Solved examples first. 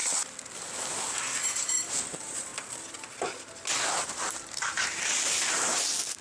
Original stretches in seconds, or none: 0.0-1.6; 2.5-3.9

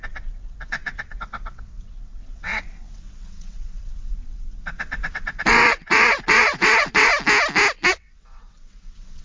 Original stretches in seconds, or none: 7.1-7.9

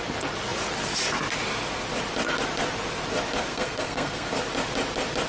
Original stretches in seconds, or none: 0.0-3.5; 4.3-5.3

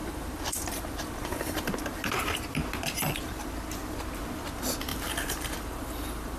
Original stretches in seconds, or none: 1.7-4.9